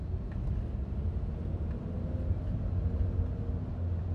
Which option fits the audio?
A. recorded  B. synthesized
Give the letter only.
A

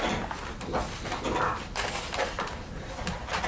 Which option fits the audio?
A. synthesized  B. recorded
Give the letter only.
B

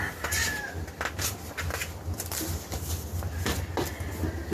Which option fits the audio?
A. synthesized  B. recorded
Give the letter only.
B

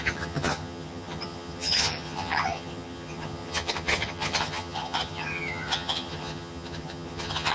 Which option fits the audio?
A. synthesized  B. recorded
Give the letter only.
A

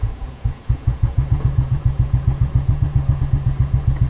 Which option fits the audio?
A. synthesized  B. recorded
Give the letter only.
A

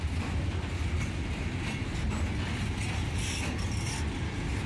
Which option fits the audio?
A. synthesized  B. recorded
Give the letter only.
B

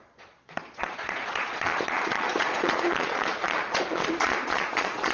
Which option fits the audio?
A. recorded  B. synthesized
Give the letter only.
B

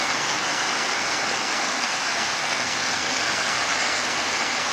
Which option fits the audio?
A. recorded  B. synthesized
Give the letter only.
B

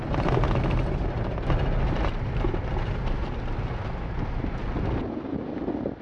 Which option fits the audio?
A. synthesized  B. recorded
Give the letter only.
B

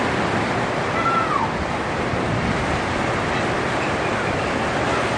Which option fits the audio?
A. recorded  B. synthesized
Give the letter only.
A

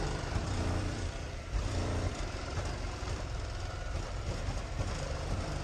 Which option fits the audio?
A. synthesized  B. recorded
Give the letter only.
A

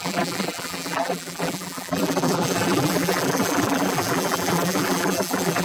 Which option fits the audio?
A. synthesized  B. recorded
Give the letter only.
A